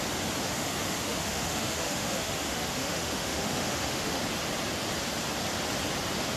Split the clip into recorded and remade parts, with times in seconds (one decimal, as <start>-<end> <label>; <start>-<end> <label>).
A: 0.0-0.4 recorded; 0.4-4.2 remade; 4.2-6.4 recorded